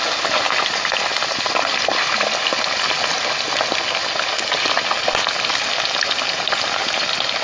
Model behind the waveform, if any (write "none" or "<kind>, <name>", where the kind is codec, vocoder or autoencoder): none